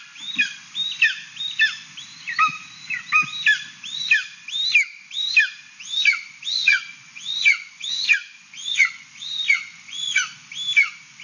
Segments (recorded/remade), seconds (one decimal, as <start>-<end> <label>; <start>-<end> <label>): 0.0-6.5 recorded; 6.5-9.1 remade; 9.1-9.7 recorded; 9.7-10.2 remade; 10.2-11.2 recorded